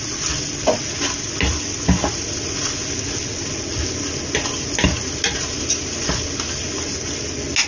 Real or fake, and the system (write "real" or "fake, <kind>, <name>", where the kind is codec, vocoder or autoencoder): real